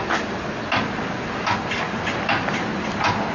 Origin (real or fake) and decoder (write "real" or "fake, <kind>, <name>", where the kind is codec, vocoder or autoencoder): real